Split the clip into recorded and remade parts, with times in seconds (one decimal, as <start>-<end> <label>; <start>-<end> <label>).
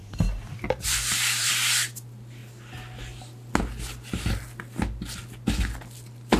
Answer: 0.0-1.5 remade; 1.5-6.4 recorded